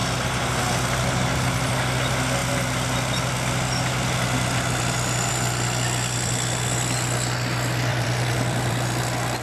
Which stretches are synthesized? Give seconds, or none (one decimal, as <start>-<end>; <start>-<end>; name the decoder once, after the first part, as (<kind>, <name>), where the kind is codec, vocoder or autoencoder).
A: 7.9-9.0 (vocoder, BigVGAN v2)